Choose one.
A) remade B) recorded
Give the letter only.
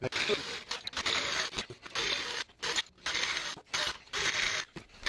B